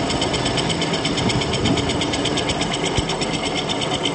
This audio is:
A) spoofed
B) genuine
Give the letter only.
B